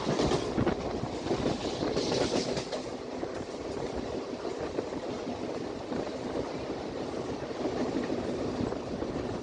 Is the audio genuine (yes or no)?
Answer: yes